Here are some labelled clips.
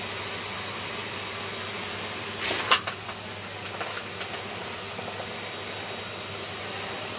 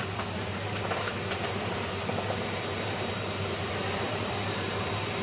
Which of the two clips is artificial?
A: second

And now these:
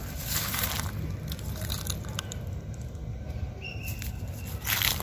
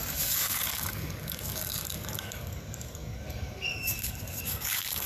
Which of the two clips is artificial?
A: second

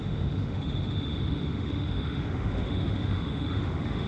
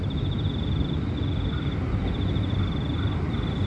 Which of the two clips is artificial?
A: first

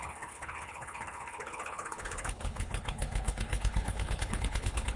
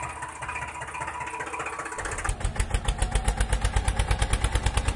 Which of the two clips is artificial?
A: first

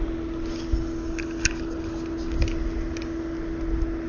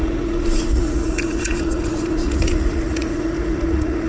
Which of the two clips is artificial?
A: second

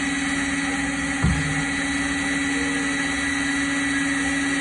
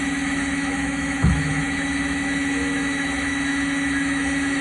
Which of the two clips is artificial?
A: second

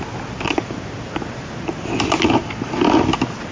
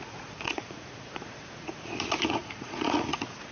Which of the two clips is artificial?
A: second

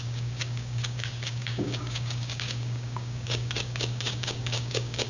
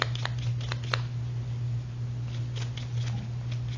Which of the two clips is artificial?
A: first